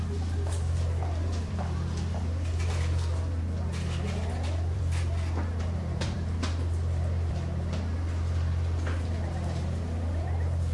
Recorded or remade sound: remade